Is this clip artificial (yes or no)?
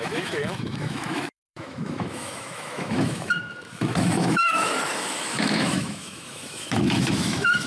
yes